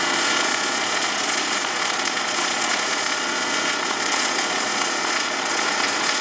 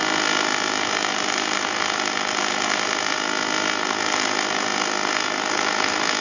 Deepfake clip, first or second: first